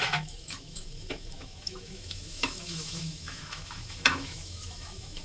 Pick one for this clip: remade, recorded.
remade